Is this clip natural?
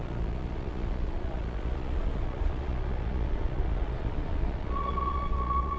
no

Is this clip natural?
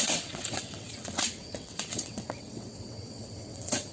no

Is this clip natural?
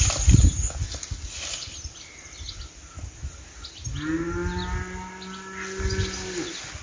yes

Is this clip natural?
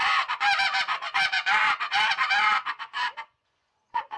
no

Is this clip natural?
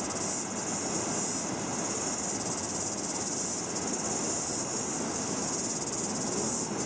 yes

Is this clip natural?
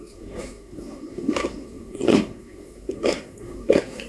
no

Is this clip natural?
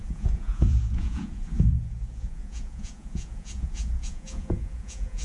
no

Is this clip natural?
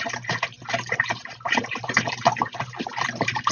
no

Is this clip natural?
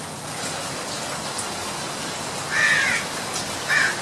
yes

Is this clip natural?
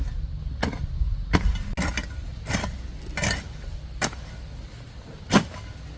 yes